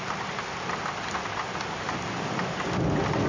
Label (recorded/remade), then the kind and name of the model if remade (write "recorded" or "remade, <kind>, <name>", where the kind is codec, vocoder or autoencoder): recorded